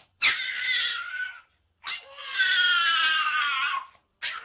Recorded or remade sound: recorded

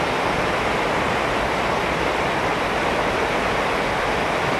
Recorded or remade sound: recorded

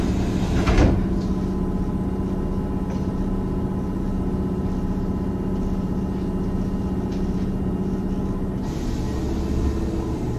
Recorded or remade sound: recorded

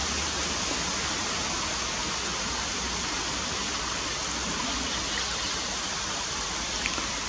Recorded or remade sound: recorded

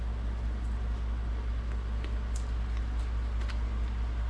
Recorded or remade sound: recorded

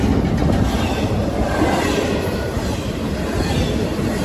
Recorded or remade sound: recorded